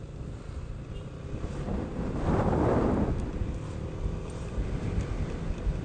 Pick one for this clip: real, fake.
real